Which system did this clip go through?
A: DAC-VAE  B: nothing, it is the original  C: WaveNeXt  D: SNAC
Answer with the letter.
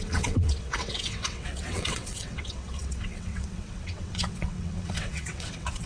C